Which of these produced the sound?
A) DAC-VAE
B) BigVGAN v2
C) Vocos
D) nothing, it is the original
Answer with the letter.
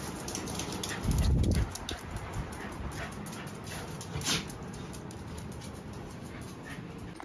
D